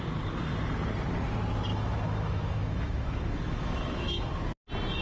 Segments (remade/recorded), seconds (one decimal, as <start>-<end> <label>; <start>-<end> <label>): 0.0-1.7 recorded; 1.7-4.2 remade; 4.2-5.0 recorded